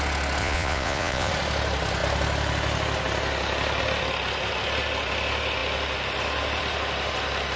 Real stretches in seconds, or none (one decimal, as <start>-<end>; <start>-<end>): 0.0-0.4; 1.3-7.6

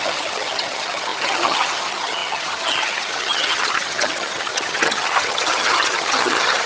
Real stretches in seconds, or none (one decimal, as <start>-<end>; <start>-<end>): none

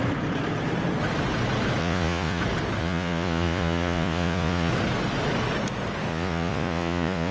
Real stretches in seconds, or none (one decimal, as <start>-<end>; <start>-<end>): 0.0-1.8; 2.4-2.8; 4.7-6.1

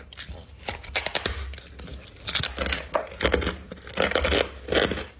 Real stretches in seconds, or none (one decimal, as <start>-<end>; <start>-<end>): 0.0-5.2